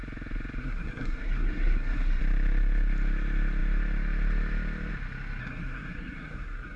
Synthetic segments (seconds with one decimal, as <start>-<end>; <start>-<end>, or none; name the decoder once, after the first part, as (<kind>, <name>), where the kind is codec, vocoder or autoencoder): 0.6-2.2 (codec, SNAC); 5.4-6.8